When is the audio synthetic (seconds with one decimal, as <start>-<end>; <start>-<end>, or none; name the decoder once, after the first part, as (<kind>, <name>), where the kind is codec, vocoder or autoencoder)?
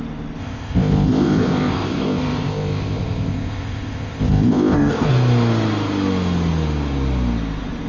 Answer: 0.4-5.1 (codec, ZipCodec)